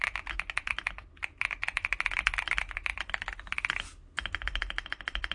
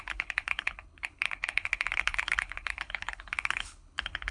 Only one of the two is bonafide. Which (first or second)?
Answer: first